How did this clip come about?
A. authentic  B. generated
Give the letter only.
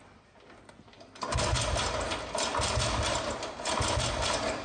A